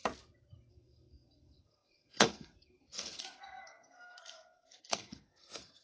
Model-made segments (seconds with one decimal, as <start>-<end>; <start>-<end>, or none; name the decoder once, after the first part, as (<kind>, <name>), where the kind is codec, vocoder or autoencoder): 0.7-5.8 (codec, SNAC)